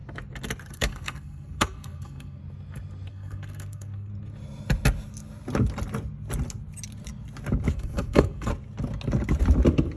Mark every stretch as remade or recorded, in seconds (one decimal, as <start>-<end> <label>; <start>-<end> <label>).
0.0-0.7 recorded; 0.7-2.4 remade; 2.4-3.1 recorded; 3.1-4.1 remade; 4.1-7.7 recorded; 7.7-8.5 remade; 8.5-10.0 recorded